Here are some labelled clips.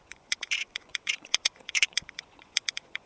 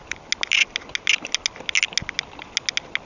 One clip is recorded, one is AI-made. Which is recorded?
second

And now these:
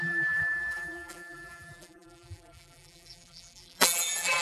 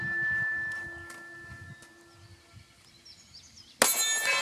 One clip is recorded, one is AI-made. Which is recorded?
second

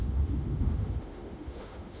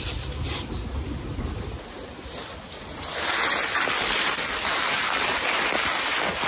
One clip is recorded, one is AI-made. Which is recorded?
second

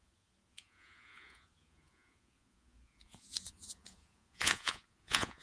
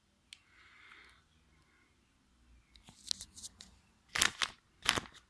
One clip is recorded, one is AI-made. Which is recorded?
second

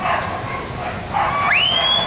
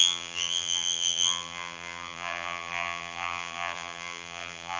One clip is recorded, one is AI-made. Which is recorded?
first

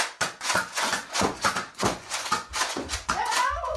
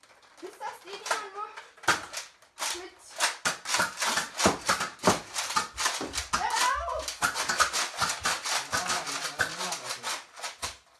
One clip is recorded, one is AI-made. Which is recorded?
second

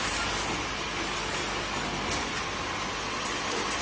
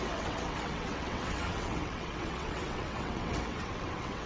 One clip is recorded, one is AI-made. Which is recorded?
first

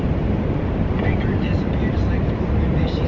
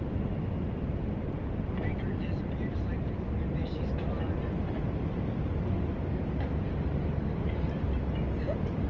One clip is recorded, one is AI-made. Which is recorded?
second